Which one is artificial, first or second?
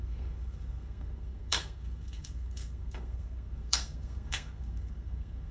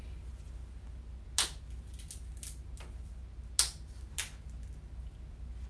first